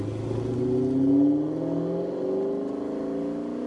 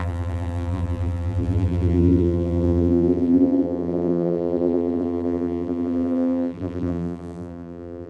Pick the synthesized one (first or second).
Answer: second